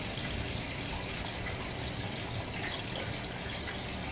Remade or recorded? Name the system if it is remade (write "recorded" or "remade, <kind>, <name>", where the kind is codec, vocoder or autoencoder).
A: recorded